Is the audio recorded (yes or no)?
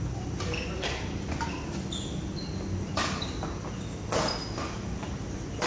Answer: yes